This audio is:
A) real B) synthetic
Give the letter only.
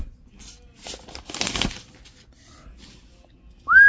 A